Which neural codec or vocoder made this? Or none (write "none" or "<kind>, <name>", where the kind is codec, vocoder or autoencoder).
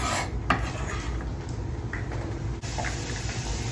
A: none